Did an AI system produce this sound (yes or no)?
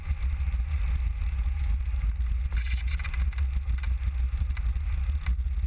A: no